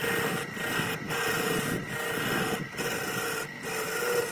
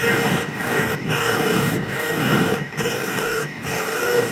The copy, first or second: second